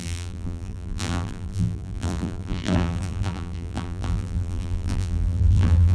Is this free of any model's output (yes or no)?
no